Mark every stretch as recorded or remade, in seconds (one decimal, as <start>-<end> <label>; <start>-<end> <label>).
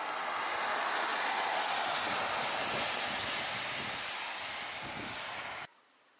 0.0-6.2 recorded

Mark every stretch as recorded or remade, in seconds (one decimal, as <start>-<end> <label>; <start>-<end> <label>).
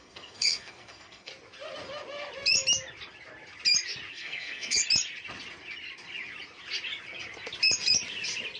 0.0-1.3 remade; 1.3-4.1 recorded; 4.1-4.8 remade; 4.8-8.6 recorded